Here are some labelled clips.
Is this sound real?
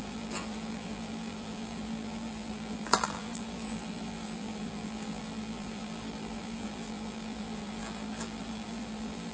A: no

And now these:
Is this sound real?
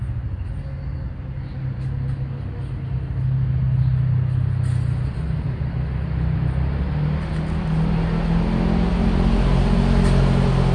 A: yes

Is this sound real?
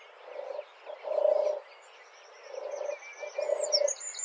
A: yes